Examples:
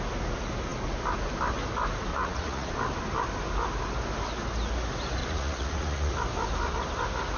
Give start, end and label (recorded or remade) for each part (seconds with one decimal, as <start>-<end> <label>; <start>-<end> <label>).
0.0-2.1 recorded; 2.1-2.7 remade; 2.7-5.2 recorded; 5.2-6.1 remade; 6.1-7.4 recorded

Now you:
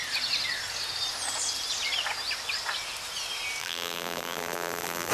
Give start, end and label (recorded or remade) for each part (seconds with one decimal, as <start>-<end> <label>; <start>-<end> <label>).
0.0-3.6 recorded; 3.6-5.1 remade

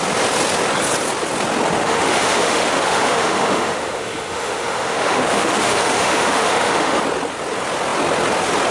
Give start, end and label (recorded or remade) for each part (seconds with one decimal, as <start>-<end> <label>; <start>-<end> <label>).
0.0-1.8 recorded; 1.8-7.0 remade; 7.0-8.7 recorded

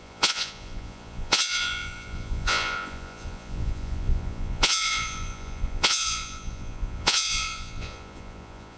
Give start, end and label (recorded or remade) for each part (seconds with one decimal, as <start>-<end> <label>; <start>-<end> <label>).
0.0-8.8 remade

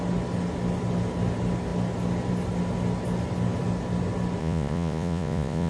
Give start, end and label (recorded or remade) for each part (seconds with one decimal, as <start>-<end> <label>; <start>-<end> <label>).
0.0-4.4 recorded; 4.4-5.7 remade

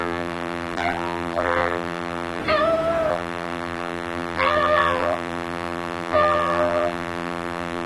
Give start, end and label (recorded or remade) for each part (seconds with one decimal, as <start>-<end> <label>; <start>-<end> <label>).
0.0-2.4 remade; 2.4-3.1 recorded; 3.1-7.9 remade

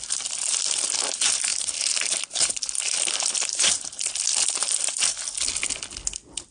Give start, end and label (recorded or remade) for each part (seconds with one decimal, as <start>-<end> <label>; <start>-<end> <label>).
0.0-1.5 recorded; 1.5-3.7 remade; 3.7-6.5 recorded